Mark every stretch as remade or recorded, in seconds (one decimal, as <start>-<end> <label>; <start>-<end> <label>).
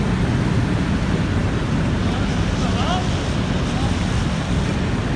0.0-5.2 recorded